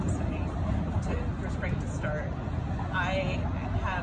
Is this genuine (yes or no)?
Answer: yes